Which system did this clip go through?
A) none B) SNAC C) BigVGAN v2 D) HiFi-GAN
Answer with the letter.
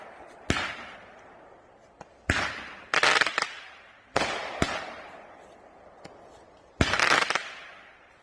C